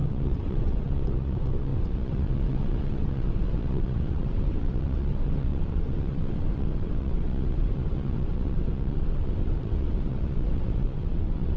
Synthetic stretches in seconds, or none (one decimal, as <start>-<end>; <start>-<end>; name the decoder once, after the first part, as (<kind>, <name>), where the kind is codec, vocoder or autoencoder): 0.0-11.6 (vocoder, WaveNeXt)